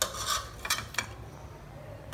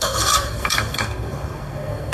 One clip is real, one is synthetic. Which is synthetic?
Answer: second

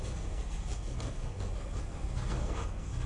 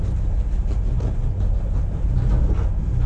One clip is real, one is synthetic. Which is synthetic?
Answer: first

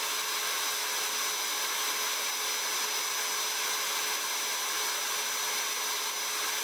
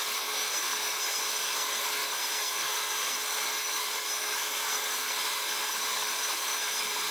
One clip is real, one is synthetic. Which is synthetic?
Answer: second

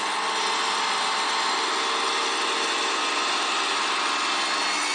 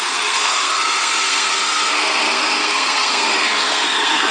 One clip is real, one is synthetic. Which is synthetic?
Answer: second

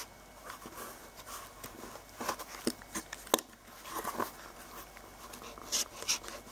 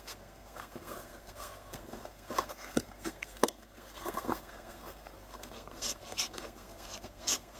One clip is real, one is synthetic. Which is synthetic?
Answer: second